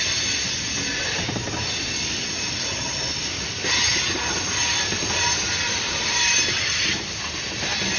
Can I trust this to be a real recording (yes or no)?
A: yes